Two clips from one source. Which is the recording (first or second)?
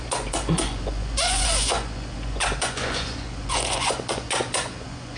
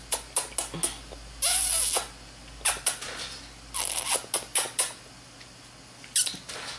second